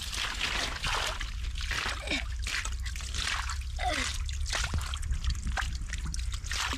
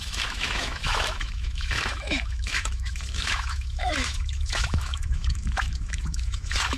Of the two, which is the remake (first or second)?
second